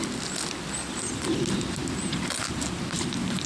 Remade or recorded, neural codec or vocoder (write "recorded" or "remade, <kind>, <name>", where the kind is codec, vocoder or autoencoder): recorded